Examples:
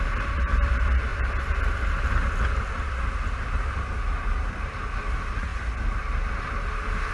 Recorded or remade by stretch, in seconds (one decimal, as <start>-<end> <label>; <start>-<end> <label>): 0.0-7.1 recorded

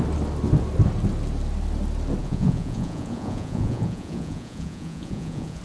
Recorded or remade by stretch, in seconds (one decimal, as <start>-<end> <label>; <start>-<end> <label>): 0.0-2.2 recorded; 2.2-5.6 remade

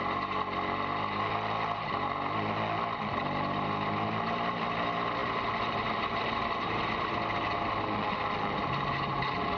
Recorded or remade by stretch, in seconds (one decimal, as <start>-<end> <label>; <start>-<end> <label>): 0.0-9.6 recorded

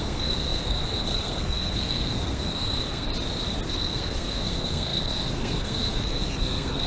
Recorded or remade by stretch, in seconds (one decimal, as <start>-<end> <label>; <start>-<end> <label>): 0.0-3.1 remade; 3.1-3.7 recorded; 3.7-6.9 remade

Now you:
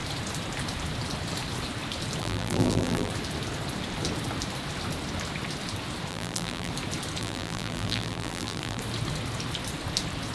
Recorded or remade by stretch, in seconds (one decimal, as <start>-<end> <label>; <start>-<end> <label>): 0.0-2.2 recorded; 2.2-3.1 remade; 3.1-6.1 recorded; 6.1-6.7 remade; 6.7-7.2 recorded; 7.2-8.8 remade; 8.8-10.3 recorded